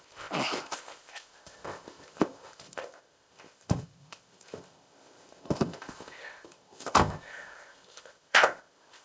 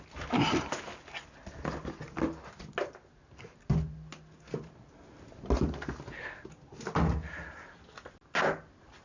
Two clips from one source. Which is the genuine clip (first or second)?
second